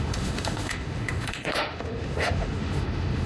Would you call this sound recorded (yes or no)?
no